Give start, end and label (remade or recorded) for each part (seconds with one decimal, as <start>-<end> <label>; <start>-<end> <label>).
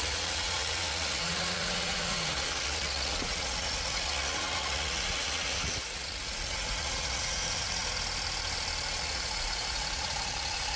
0.0-7.8 remade; 7.8-9.0 recorded; 9.0-10.8 remade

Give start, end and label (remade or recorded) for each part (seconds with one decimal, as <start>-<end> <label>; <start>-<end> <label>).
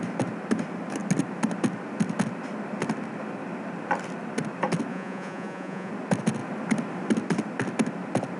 0.0-4.9 recorded; 4.9-5.9 remade; 5.9-8.4 recorded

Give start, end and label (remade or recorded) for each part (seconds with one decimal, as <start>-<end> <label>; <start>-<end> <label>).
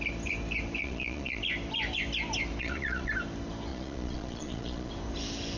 0.0-0.8 recorded; 0.8-1.4 remade; 1.4-2.6 recorded; 2.6-3.1 remade; 3.1-3.7 recorded; 3.7-4.9 remade; 4.9-5.6 recorded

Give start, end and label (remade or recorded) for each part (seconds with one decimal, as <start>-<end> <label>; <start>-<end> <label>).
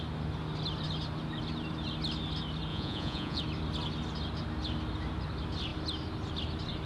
0.0-2.7 recorded; 2.7-3.4 remade; 3.4-6.9 recorded